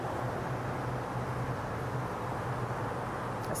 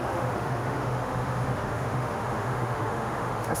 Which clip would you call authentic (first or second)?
first